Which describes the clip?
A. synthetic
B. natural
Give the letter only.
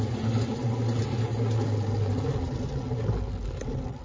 B